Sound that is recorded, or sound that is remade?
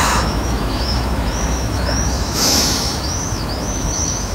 remade